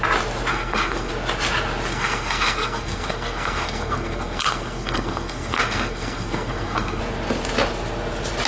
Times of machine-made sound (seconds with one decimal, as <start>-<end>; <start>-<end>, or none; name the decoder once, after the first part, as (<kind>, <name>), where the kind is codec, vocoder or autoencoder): 0.5-1.1 (codec, SNAC); 1.9-7.0